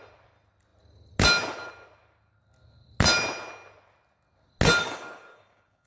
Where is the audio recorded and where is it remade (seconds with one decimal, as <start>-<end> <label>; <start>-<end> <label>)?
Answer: 0.0-4.8 recorded; 4.8-5.9 remade